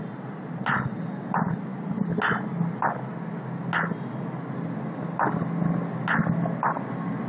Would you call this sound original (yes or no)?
yes